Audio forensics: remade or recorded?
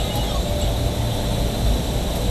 recorded